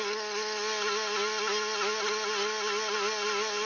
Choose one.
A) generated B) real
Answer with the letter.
B